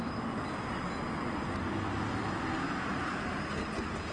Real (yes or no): yes